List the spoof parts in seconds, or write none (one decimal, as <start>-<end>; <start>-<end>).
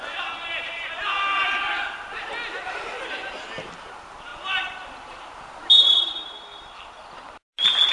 none